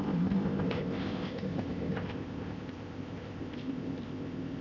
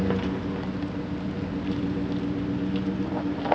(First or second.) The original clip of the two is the second